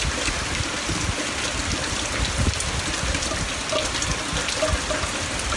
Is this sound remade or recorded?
recorded